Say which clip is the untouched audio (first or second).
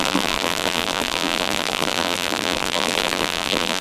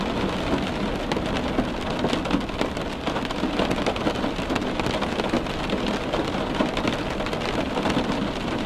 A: second